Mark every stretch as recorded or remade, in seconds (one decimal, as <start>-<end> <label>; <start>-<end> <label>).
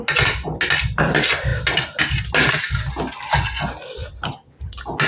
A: 0.0-5.1 recorded